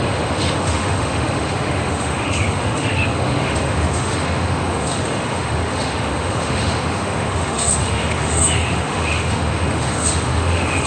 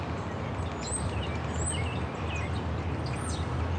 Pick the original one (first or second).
second